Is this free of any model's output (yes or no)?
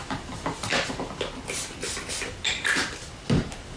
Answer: no